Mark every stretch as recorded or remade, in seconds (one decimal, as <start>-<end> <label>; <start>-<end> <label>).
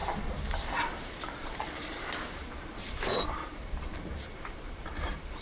0.0-3.2 remade; 3.2-3.9 recorded; 3.9-5.4 remade